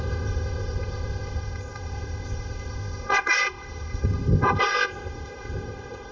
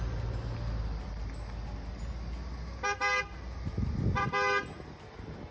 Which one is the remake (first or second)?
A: first